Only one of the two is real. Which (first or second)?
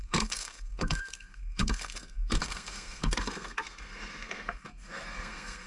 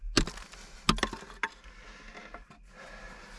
second